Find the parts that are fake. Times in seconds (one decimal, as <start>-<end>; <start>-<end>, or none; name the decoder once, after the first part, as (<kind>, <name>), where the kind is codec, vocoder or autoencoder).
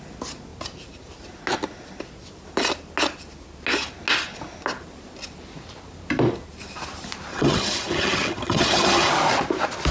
7.3-9.1 (vocoder, HiFi-GAN)